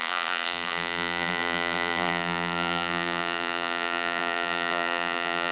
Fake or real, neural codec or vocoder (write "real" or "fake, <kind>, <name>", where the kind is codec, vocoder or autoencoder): fake, vocoder, BigVGAN v2